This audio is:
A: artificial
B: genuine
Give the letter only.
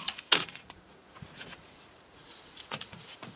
A